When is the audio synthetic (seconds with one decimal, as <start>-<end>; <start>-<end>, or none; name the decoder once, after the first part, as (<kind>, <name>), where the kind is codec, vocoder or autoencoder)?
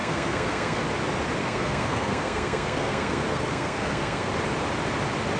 0.0-0.8 (codec, SNAC); 1.4-4.3